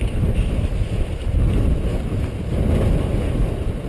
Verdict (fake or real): real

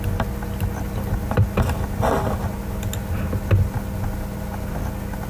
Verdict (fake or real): real